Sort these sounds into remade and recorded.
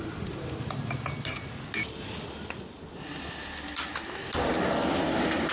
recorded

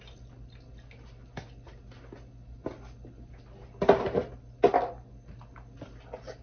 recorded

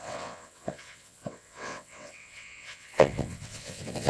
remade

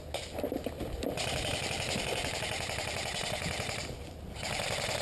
recorded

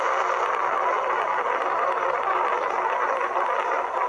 recorded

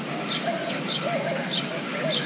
recorded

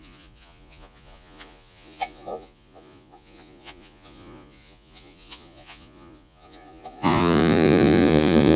remade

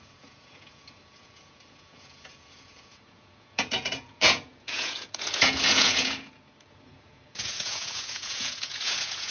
remade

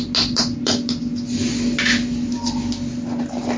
recorded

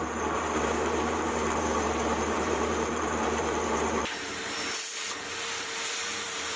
remade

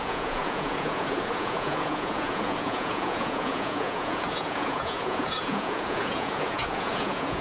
remade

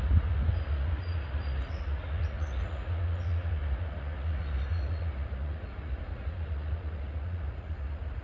remade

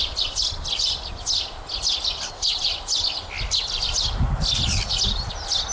recorded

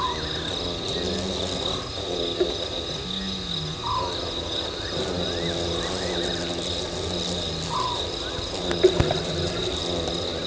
recorded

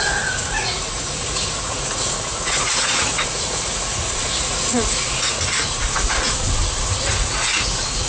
remade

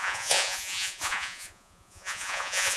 remade